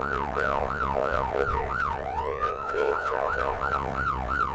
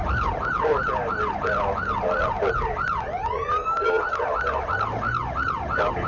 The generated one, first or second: first